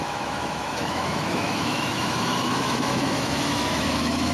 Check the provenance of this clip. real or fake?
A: fake